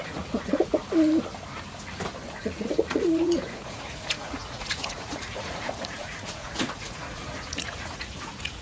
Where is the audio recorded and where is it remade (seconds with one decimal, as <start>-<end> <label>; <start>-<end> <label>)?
0.0-0.8 remade; 0.8-2.4 recorded; 2.4-8.6 remade